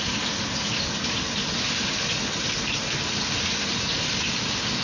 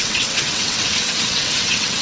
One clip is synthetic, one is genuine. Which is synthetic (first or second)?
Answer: second